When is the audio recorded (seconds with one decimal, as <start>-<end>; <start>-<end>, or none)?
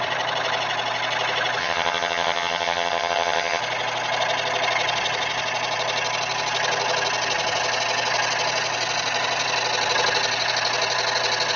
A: 0.0-1.6; 3.6-11.6